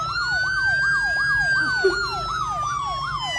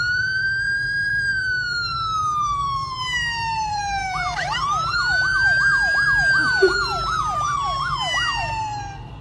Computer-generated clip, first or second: second